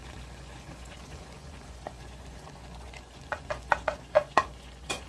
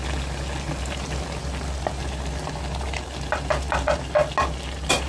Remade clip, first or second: first